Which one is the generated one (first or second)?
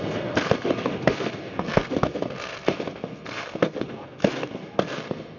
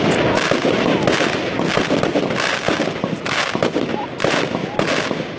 first